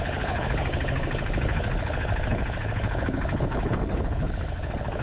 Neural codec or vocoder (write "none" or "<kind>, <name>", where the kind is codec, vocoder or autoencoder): codec, HILCodec